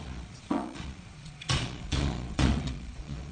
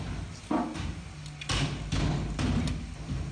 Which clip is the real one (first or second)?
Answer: second